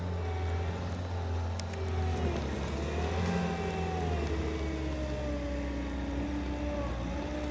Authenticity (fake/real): real